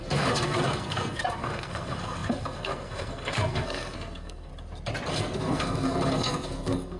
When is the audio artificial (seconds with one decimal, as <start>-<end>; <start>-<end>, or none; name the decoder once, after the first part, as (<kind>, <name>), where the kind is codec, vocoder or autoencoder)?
0.0-4.5 (codec, SNAC); 5.1-7.0